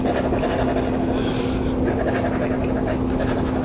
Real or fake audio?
real